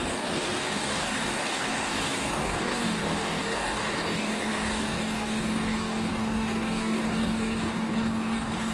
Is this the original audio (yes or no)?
no